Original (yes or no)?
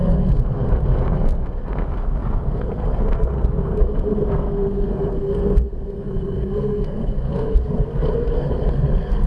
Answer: no